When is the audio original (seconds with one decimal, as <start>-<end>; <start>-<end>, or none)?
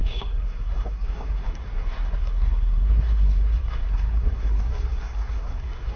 none